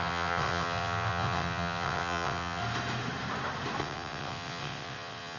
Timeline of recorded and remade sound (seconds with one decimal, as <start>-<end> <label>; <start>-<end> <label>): 0.0-2.6 remade; 2.6-3.8 recorded; 3.8-5.4 remade